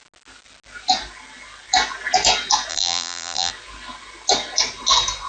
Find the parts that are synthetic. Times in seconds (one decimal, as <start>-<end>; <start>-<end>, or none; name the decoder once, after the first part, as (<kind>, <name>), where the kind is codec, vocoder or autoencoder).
2.7-3.5 (vocoder, BigVGAN v2)